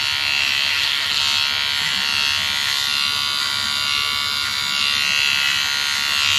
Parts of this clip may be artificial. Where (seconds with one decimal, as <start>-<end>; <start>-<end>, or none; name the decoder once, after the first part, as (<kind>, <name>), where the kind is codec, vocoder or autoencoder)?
0.7-1.2 (codec, SNAC)